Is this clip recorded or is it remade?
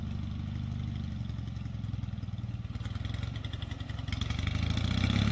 recorded